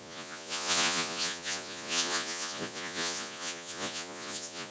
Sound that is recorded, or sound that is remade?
remade